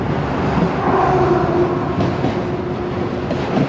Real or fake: real